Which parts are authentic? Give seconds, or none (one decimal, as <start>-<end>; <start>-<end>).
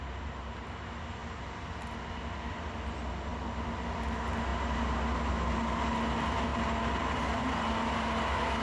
0.0-8.6